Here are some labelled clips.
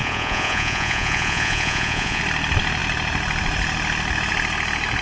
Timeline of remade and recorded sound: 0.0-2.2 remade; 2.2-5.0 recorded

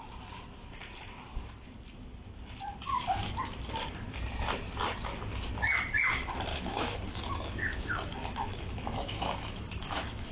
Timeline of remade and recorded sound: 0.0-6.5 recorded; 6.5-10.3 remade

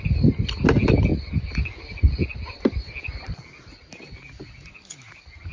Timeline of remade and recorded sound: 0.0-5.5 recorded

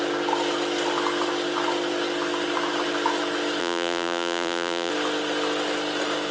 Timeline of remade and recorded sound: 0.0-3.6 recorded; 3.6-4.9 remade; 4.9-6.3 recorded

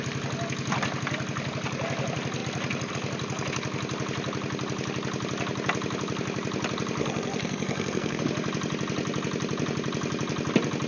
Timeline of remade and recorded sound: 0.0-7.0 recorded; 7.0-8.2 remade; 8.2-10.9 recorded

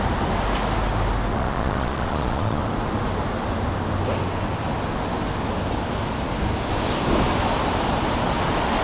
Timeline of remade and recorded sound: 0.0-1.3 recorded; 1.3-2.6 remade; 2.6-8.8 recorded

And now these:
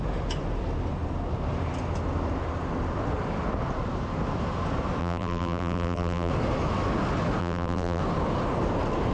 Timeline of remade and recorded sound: 0.0-5.0 recorded; 5.0-6.3 remade; 6.3-7.4 recorded; 7.4-8.0 remade; 8.0-9.1 recorded

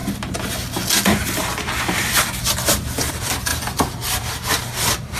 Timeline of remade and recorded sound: 0.0-3.1 recorded; 3.1-5.2 remade